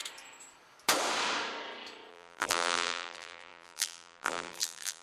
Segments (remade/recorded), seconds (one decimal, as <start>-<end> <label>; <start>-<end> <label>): 0.0-2.1 recorded; 2.1-5.0 remade